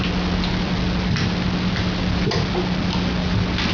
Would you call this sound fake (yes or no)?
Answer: no